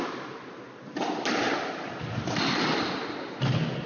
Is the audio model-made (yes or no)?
no